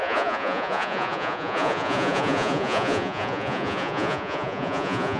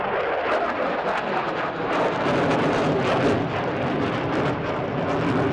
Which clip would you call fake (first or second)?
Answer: first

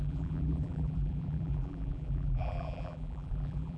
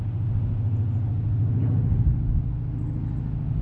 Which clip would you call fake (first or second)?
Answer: first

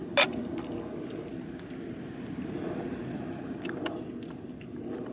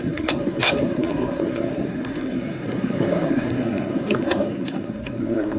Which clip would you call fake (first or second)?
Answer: second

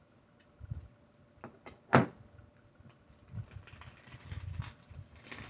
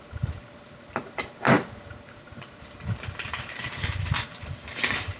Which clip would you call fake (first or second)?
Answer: second